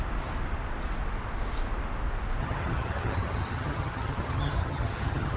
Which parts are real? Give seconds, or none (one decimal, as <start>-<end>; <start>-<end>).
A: 0.0-2.4

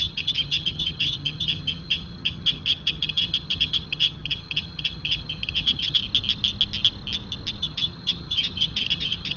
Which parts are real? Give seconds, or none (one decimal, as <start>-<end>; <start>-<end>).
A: 6.0-7.6